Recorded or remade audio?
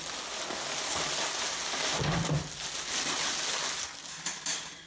recorded